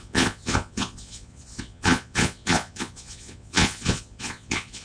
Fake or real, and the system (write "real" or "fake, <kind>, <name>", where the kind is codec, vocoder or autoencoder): fake, vocoder, Vocos